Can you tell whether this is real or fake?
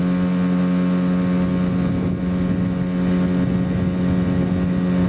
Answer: real